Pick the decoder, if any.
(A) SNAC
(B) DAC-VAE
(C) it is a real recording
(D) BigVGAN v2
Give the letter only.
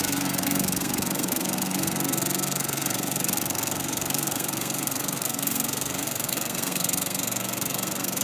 A